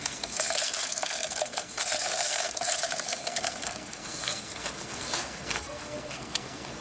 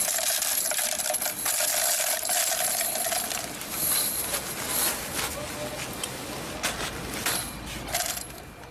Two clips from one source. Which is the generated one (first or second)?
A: first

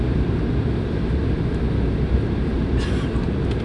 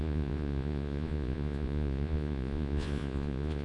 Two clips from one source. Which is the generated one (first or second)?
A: second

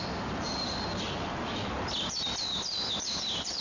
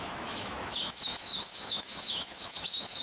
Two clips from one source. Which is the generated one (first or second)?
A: second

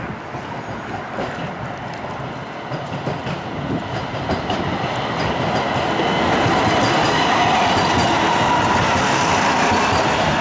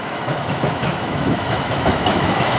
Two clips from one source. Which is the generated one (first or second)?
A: second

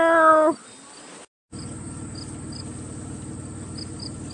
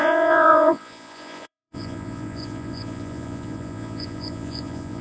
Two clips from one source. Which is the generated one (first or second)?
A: second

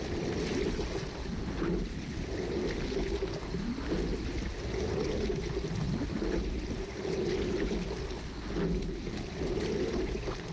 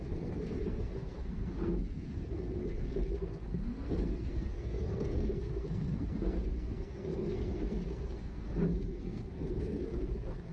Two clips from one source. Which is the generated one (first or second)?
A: second